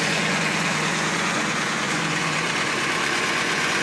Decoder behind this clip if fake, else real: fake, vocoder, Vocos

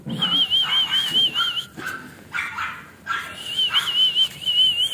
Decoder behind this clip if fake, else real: real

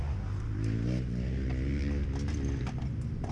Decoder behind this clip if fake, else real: real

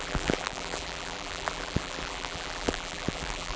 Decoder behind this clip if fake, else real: fake, vocoder, BigVGAN v2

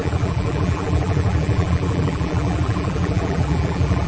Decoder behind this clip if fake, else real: fake, vocoder, BigVGAN v2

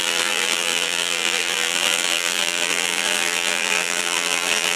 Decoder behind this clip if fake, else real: fake, vocoder, BigVGAN v2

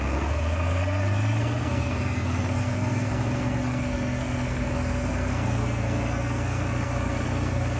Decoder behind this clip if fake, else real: fake, codec, SNAC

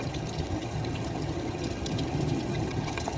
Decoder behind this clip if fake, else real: fake, vocoder, HiFi-GAN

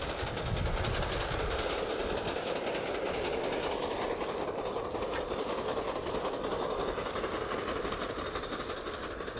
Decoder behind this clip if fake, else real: real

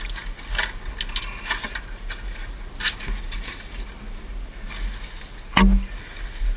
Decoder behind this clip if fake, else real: real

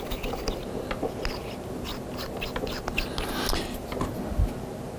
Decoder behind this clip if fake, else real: real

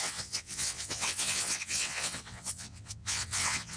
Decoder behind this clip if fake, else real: fake, vocoder, WaveNeXt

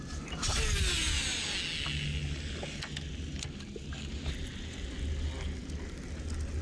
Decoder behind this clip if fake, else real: real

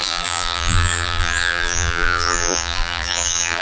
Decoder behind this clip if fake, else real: fake, vocoder, BigVGAN v2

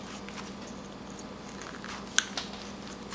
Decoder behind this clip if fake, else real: real